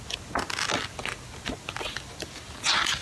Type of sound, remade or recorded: recorded